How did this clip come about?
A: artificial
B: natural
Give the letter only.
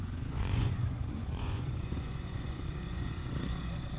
A